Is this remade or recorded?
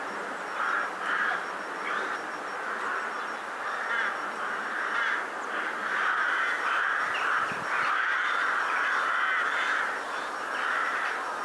remade